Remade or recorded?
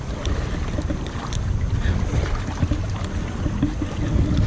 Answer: recorded